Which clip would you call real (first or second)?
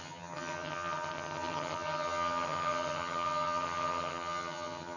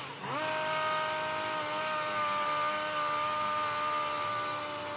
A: second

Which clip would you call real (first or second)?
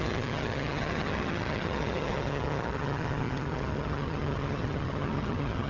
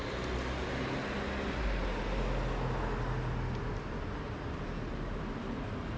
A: second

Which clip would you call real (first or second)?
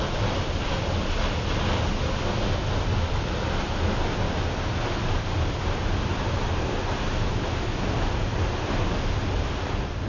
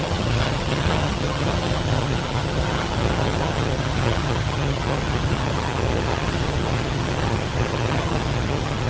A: first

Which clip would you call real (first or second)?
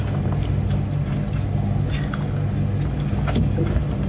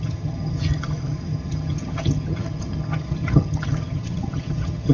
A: first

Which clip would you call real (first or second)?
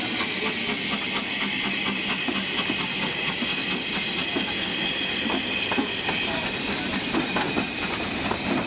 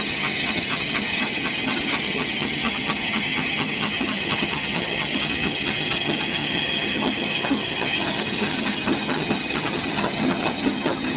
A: first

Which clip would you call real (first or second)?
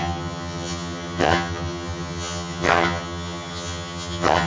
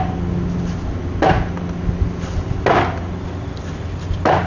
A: second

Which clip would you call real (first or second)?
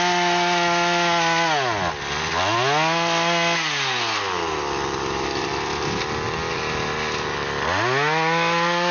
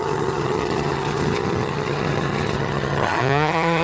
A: first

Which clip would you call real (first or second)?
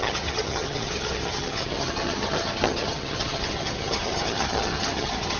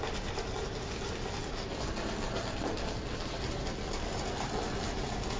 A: second